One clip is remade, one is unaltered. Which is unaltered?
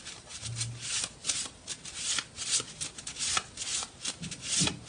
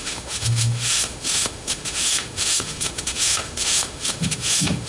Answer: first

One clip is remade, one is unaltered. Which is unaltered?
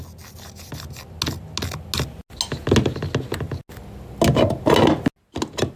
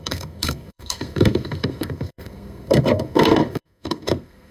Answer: first